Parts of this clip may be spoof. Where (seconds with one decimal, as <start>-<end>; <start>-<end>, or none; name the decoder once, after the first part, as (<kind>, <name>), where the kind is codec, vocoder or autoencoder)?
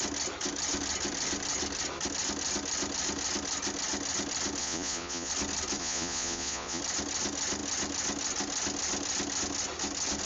4.6-5.3 (vocoder, Vocos); 5.8-6.8